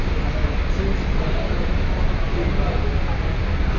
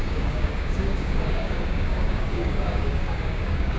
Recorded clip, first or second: first